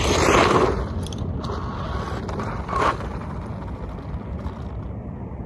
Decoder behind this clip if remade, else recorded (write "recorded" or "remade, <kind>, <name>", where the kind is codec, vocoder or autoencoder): recorded